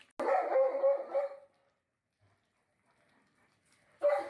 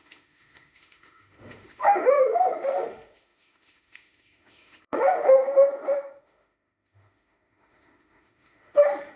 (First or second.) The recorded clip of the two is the first